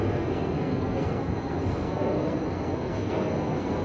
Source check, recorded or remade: remade